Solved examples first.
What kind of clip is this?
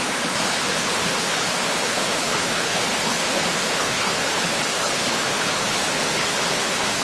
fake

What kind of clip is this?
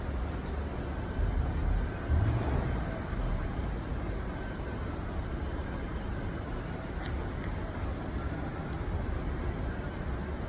real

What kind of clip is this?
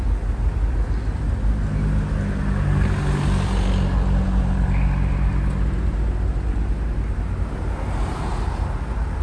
real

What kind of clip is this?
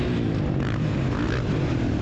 real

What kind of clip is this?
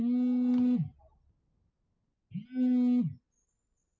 real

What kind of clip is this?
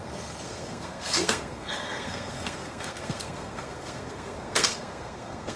fake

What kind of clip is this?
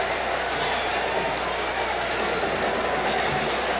real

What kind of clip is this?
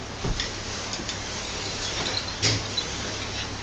real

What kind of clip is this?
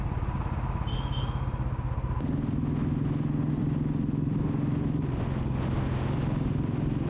real